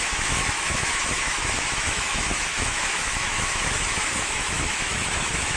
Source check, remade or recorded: remade